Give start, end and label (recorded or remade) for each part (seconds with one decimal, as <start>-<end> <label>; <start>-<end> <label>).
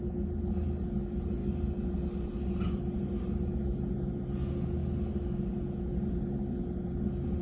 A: 0.0-7.4 recorded